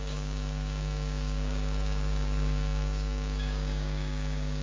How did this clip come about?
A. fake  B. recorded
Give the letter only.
A